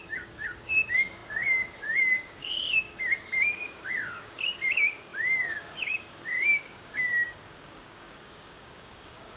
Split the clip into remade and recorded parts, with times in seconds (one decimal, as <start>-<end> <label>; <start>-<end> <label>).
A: 0.0-9.4 remade